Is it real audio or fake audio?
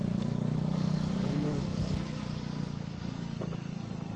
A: fake